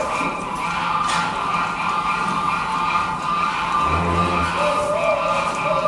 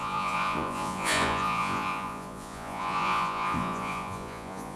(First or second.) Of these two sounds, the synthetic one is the second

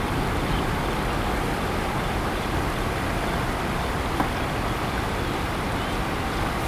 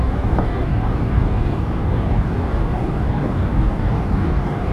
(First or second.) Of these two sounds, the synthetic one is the second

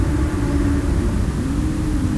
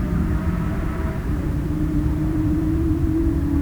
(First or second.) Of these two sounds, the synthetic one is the second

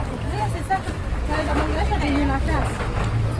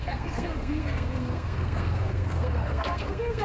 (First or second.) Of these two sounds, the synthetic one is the second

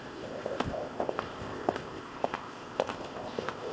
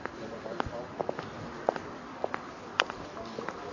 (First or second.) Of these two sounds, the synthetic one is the first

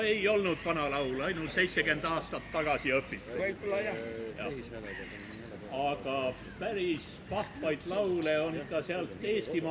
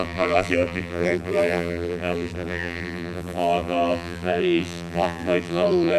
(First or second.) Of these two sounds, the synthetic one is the second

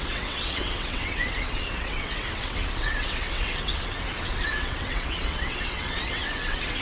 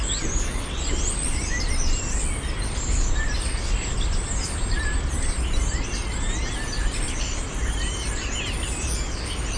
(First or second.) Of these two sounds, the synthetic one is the first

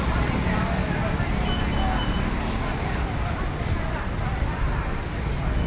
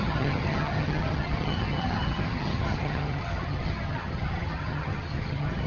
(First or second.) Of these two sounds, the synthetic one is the second